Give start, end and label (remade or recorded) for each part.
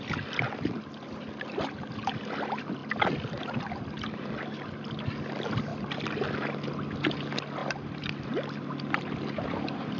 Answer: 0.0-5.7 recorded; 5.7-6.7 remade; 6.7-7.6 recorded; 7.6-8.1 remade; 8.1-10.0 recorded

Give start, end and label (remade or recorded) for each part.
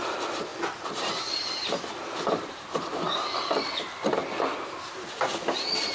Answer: 0.0-0.5 recorded; 0.5-3.4 remade; 3.4-4.2 recorded; 4.2-4.8 remade; 4.8-5.9 recorded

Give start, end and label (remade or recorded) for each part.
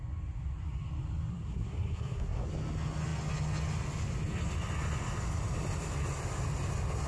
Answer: 0.0-1.3 recorded; 1.3-2.5 remade; 2.5-7.1 recorded